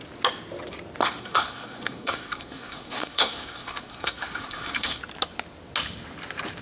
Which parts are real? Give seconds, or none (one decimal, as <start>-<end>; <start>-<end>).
0.0-1.0; 5.0-6.6